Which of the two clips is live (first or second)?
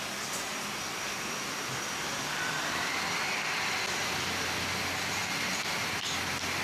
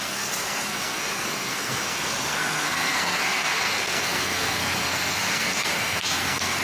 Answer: first